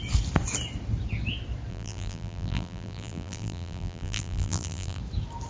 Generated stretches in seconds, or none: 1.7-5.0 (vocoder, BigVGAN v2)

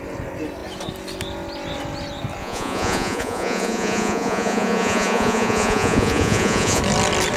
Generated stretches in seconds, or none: 2.4-6.8 (vocoder, Vocos)

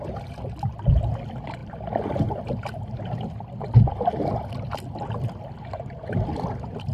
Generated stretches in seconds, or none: none

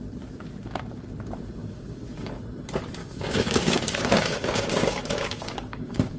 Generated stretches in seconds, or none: 1.6-2.3 (codec, DAC); 3.0-6.2

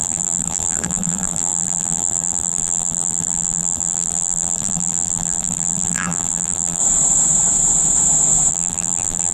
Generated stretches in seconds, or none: 0.0-6.8 (vocoder, BigVGAN v2); 8.5-9.3

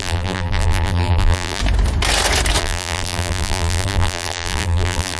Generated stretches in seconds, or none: 0.0-1.6 (vocoder, BigVGAN v2); 2.6-5.2

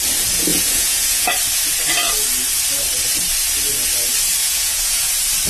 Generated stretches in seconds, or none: 0.5-1.3 (vocoder, Vocos); 4.4-5.1